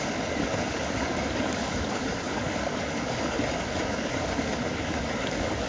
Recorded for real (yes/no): no